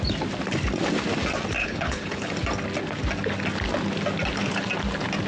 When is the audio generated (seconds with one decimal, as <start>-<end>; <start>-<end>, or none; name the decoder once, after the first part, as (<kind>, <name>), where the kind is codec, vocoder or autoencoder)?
1.6-2.3 (codec, HILCodec)